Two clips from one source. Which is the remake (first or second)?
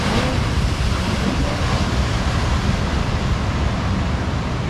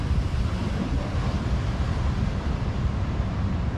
second